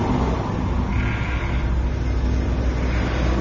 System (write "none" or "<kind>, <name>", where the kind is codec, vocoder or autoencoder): none